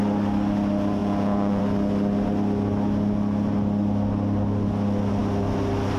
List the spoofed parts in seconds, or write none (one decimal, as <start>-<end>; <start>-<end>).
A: 1.0-1.6